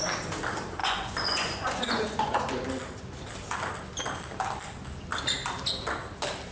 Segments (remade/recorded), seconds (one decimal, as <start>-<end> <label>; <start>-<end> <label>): 0.0-0.8 recorded; 0.8-2.4 remade; 2.4-6.5 recorded